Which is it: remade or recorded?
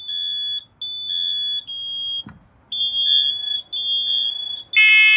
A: recorded